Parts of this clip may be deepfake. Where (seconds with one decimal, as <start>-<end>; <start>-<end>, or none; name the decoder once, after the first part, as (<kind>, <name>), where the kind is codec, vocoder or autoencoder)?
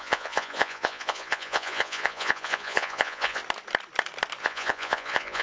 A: 0.0-3.4 (vocoder, Vocos); 4.4-5.4